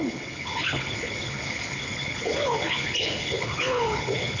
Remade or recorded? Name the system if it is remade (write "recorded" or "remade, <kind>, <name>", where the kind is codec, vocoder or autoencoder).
remade, codec, HILCodec